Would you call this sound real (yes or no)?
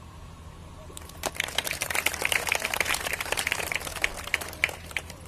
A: no